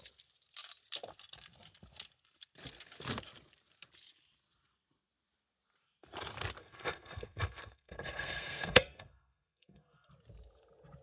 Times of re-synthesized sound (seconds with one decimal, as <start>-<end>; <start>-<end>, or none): 6.6-10.1

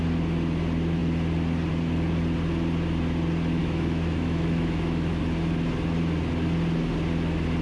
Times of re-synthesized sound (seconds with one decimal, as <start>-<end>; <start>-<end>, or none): 3.6-5.2